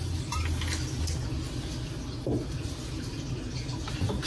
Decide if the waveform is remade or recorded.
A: recorded